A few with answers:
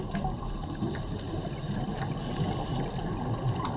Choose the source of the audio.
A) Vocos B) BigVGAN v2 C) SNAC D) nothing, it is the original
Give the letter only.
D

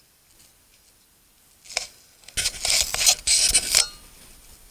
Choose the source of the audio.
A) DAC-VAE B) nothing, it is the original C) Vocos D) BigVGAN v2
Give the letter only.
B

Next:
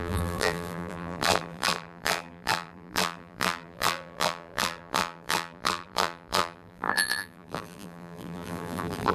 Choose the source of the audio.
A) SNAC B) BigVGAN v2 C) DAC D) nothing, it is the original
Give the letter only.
B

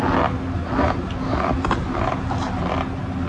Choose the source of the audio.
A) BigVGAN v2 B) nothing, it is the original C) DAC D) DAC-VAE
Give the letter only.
B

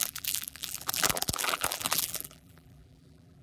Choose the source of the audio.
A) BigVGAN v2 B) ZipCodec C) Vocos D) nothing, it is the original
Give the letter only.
A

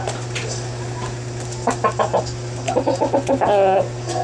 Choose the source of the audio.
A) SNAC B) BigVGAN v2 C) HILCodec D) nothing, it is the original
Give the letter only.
D